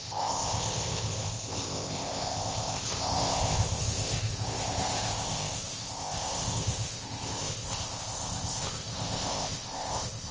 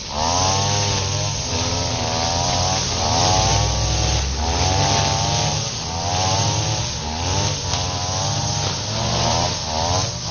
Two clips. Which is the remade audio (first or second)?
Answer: first